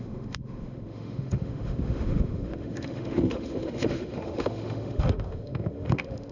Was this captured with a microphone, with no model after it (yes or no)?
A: no